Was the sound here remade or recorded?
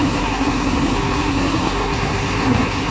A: remade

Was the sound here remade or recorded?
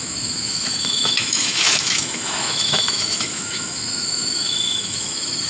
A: remade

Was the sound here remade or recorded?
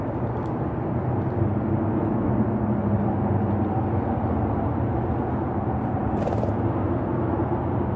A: recorded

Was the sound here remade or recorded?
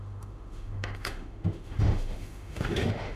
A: remade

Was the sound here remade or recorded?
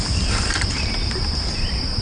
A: remade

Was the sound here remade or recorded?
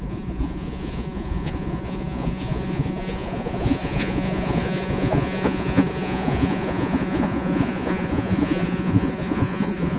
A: remade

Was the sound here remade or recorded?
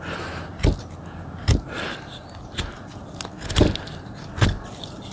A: recorded